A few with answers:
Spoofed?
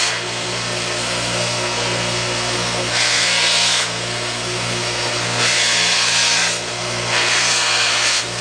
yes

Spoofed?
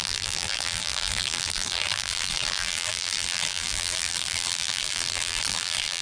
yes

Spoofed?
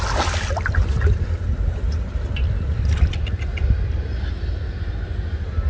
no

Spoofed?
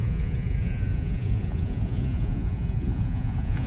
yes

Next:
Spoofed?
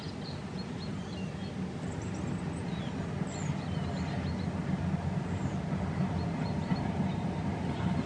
no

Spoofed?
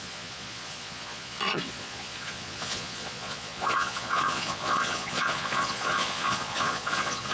yes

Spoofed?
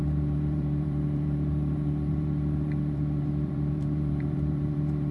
yes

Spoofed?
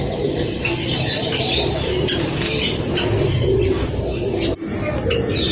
no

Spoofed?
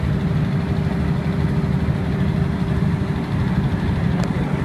no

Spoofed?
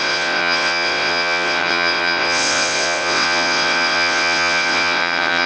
yes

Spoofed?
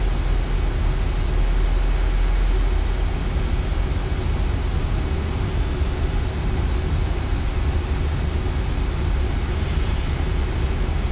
no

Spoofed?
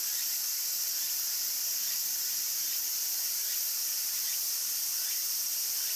no